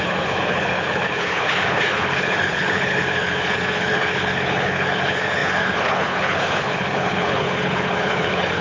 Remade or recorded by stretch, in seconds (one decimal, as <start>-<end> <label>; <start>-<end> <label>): 0.0-8.6 remade